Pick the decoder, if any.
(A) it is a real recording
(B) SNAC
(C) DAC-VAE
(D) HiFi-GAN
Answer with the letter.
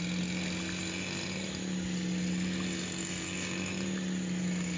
A